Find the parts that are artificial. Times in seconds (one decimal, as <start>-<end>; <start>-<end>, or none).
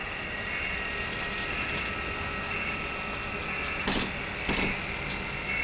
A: none